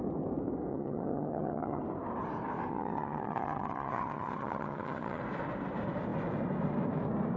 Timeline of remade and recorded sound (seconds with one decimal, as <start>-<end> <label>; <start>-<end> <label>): 0.0-0.7 recorded; 0.7-1.8 remade; 1.8-2.7 recorded; 2.7-5.2 remade; 5.2-7.4 recorded